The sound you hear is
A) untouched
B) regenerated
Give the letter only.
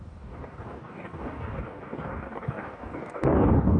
B